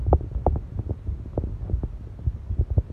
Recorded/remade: recorded